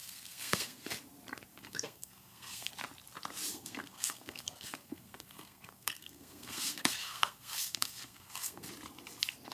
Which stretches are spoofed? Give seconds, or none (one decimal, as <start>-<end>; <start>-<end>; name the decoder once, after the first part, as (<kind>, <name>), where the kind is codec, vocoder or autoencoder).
0.0-0.9 (codec, SNAC); 1.5-2.7; 3.5-8.7

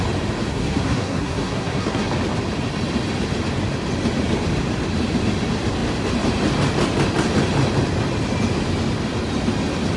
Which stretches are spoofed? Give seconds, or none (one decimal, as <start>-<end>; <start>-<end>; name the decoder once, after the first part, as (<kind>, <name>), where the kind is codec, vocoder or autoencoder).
0.5-2.1 (codec, SNAC)

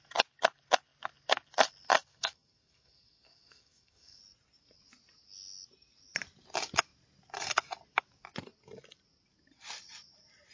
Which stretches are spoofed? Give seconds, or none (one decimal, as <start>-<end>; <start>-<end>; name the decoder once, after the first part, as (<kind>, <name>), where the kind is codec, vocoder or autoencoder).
2.1-4.2 (codec, SNAC)